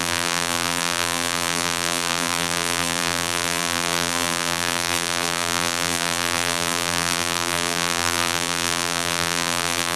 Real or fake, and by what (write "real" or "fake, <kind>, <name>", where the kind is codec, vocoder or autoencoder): fake, vocoder, BigVGAN v2